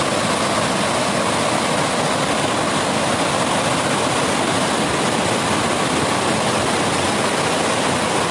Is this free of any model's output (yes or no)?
yes